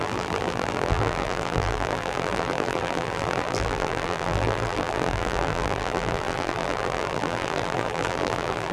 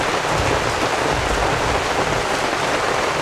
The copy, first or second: first